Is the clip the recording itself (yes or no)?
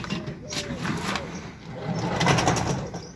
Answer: yes